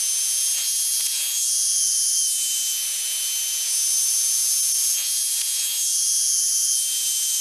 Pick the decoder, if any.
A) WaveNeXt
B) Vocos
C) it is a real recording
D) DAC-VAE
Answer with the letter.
B